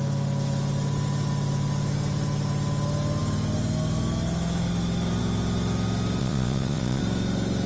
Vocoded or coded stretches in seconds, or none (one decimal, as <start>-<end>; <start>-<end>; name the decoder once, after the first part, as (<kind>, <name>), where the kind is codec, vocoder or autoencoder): 6.2-7.0 (vocoder, Vocos)